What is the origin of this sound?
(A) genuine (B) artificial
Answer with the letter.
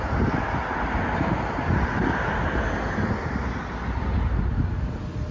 A